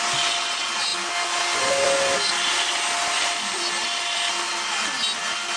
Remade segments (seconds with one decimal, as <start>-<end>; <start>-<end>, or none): none